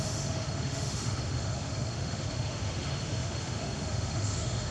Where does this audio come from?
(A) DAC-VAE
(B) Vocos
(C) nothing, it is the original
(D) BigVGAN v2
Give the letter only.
A